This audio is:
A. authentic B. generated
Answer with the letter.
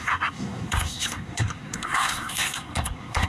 B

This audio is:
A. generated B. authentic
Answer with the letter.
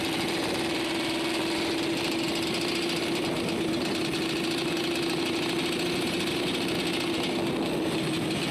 B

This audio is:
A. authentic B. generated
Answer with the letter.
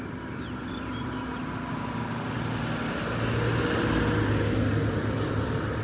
A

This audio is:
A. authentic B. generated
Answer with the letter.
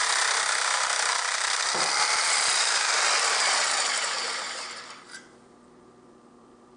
B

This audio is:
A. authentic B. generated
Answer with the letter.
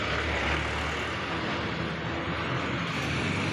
A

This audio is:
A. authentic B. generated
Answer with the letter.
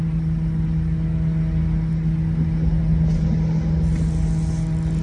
A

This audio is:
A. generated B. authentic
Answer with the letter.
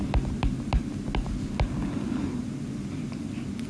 B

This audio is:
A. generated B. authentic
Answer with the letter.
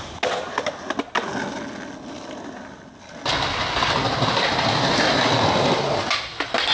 B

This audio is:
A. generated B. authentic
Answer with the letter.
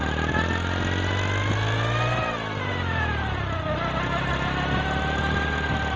B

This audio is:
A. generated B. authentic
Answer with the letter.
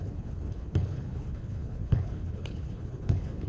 A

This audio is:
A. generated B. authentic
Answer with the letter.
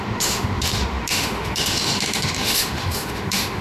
A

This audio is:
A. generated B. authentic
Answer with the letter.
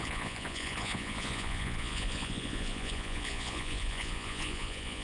A